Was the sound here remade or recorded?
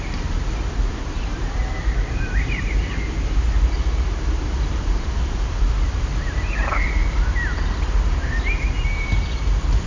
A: remade